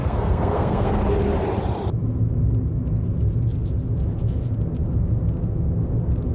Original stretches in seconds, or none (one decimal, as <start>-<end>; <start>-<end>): 1.0-6.3